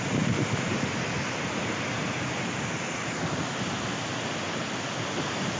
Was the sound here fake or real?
real